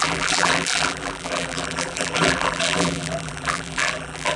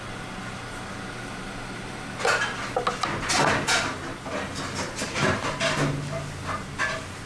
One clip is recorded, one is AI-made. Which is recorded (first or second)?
second